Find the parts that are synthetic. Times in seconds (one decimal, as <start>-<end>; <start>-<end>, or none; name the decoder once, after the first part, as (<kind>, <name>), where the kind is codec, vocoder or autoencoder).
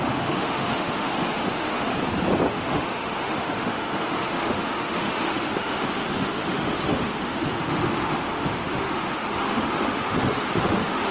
0.0-1.9 (autoencoder, DAC-VAE); 2.5-11.1